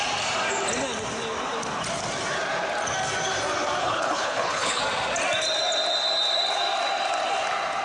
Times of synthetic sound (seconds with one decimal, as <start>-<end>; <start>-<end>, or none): 3.8-4.8